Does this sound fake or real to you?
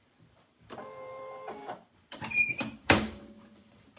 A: fake